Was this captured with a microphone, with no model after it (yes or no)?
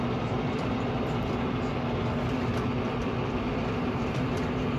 no